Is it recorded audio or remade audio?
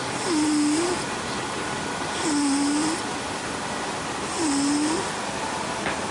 recorded